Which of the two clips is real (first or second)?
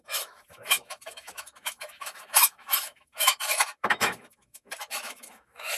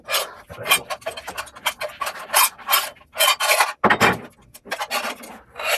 second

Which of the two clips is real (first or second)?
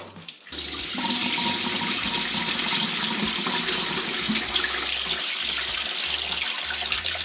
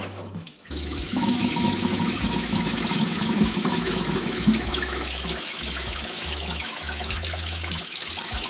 first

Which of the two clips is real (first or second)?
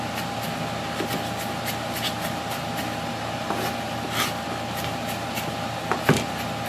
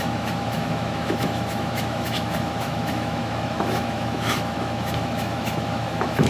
first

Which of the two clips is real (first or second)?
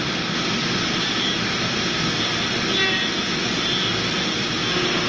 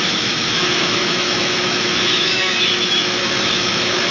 first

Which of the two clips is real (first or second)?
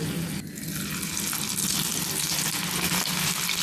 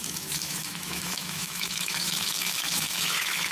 first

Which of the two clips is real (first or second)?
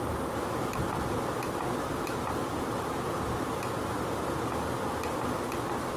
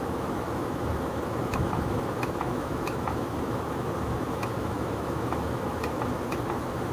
first